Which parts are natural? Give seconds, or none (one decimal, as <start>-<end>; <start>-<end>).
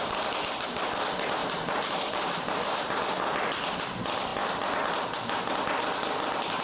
0.0-1.4; 3.0-6.6